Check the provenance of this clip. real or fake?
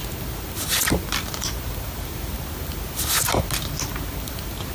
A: real